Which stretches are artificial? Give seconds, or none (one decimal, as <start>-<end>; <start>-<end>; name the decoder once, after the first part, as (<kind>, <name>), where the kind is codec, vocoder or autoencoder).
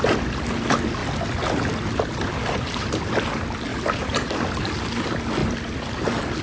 2.4-3.0 (vocoder, BigVGAN v2); 3.7-4.3